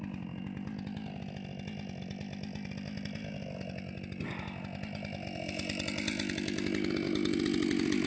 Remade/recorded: recorded